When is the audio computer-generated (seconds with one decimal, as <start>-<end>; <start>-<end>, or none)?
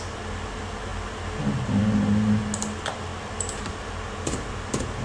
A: none